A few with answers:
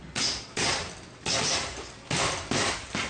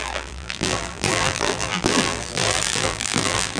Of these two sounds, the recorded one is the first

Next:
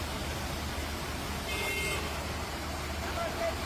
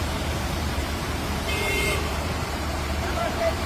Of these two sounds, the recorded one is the first